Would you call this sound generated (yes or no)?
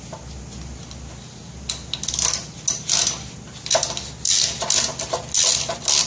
no